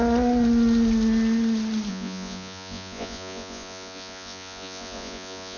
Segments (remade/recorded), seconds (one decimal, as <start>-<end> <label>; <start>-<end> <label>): 0.0-1.9 recorded; 1.9-5.6 remade

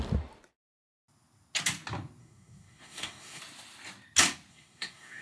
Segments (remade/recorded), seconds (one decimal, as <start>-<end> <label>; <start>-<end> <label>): 0.0-2.2 recorded; 2.2-3.4 remade; 3.4-4.5 recorded; 4.5-5.2 remade

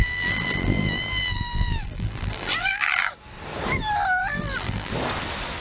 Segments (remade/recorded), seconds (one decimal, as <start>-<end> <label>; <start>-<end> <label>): 0.0-3.1 remade; 3.1-4.2 recorded; 4.2-4.9 remade; 4.9-5.6 recorded

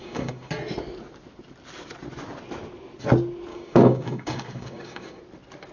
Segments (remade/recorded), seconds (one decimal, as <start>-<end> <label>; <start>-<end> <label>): 0.0-0.5 remade; 0.5-3.5 recorded; 3.5-5.2 remade; 5.2-5.7 recorded

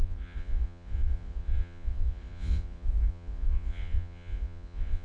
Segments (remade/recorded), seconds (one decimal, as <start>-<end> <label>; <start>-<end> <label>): 0.0-5.0 remade

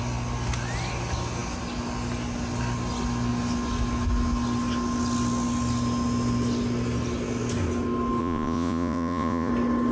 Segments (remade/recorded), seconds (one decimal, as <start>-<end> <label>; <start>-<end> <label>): 0.0-8.2 recorded; 8.2-9.5 remade; 9.5-9.9 recorded

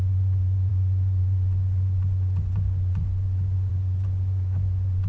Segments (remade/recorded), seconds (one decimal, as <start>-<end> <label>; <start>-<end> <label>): 0.0-5.1 remade